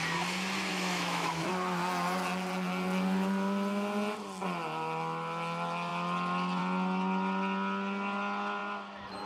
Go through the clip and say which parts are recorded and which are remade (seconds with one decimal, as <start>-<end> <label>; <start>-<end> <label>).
0.0-0.7 recorded; 0.7-1.5 remade; 1.5-9.3 recorded